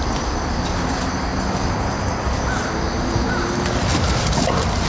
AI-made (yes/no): no